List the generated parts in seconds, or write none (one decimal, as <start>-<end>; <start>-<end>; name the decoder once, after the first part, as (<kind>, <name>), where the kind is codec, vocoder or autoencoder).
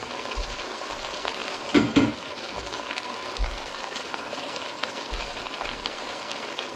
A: 0.0-6.8 (codec, SNAC)